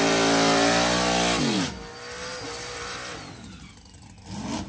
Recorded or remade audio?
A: recorded